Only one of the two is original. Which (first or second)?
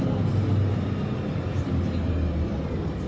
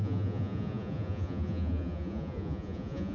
first